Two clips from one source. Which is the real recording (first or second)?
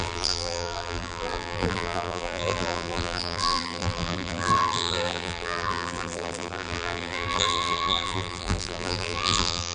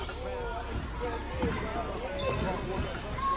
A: second